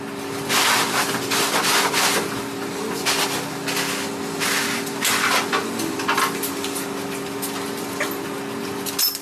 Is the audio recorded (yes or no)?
yes